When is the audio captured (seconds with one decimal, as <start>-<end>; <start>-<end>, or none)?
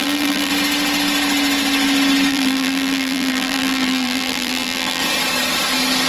0.5-2.3; 5.0-6.1